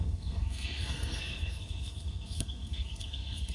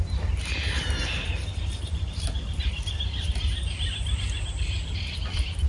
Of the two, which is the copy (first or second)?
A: first